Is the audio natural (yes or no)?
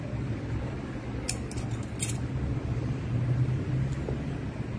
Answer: yes